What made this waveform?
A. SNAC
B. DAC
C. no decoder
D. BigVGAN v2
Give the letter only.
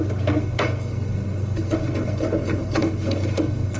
A